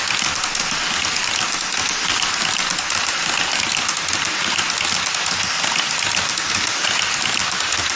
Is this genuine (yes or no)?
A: yes